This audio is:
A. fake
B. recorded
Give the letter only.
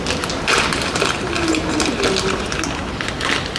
B